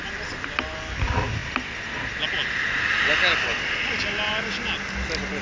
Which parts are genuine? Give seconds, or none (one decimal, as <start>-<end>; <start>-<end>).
0.0-5.4